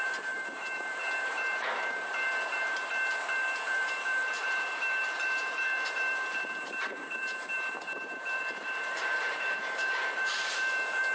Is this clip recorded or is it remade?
remade